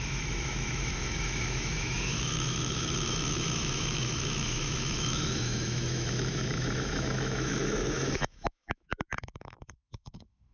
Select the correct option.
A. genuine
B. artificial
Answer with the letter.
B